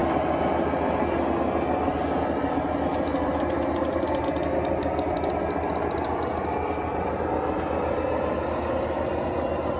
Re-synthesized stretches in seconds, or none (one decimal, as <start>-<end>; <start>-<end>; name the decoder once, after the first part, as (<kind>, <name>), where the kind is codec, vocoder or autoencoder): none